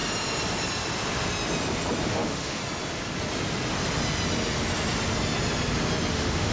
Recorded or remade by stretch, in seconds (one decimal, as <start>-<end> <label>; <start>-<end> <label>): 0.0-2.1 recorded; 2.1-2.6 remade; 2.6-6.1 recorded; 6.1-6.5 remade